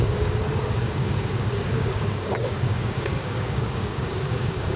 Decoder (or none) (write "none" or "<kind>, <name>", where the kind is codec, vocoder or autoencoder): codec, DAC